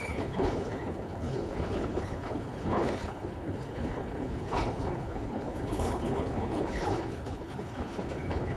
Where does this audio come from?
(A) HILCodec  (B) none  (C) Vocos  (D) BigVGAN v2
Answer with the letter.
A